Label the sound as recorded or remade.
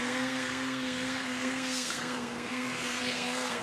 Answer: remade